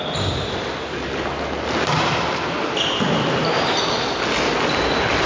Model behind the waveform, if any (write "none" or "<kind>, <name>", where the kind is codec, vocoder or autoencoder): none